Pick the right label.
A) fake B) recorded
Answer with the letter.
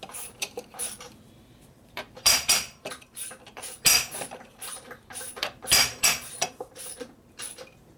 A